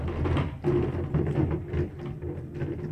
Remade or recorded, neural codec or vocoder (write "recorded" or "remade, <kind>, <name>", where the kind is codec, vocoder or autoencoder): recorded